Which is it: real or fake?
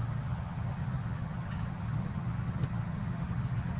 fake